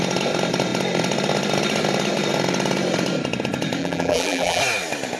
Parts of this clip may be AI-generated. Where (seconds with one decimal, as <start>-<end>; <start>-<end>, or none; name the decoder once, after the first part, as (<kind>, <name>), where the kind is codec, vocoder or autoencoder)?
3.8-4.6 (vocoder, BigVGAN v2)